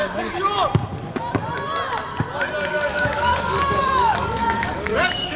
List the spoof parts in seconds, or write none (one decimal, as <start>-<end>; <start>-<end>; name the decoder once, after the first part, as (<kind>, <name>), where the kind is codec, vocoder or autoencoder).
0.0-0.5 (codec, DAC); 2.7-5.4